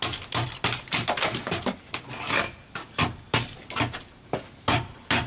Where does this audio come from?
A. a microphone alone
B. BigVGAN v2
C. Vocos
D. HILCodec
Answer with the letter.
A